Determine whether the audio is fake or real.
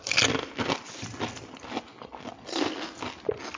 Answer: real